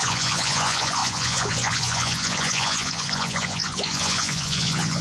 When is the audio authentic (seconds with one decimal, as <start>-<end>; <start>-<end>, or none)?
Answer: none